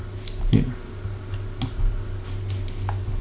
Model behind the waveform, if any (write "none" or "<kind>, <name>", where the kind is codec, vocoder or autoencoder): none